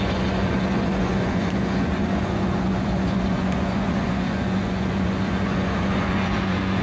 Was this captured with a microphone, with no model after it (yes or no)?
no